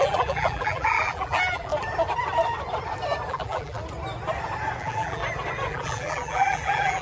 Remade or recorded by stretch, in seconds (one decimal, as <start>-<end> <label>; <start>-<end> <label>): 0.0-1.7 remade; 1.7-3.3 recorded; 3.3-3.8 remade; 3.8-4.8 recorded; 4.8-5.2 remade; 5.2-5.7 recorded; 5.7-7.0 remade